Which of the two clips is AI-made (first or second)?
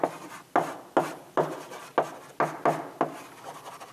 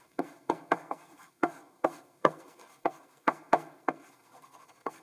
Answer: second